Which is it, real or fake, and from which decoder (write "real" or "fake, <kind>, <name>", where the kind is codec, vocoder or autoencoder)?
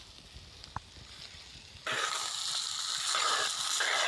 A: real